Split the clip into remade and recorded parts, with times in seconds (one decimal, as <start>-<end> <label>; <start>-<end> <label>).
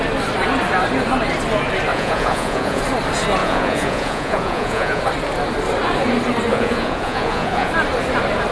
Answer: 0.0-1.9 recorded; 1.9-2.8 remade; 2.8-3.4 recorded; 3.4-5.0 remade; 5.0-6.5 recorded; 6.5-7.7 remade; 7.7-8.5 recorded